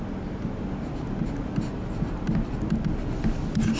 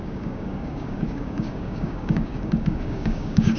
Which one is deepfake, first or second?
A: second